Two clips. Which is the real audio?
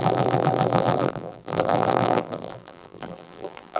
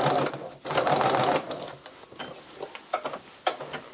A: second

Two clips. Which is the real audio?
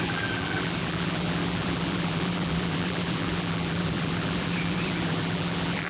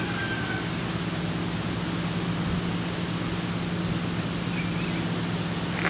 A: second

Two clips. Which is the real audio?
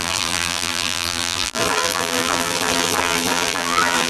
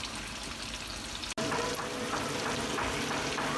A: second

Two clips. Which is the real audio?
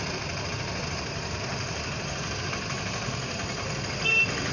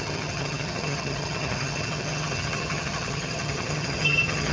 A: first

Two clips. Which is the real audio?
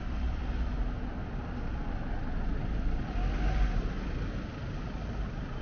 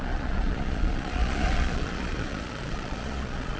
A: first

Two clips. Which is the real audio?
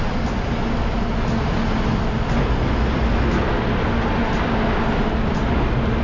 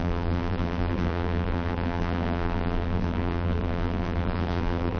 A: first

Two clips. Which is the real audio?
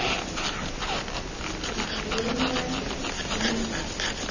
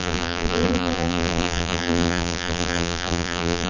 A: first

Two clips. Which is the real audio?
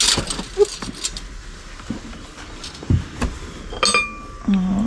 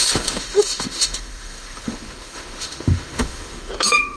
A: first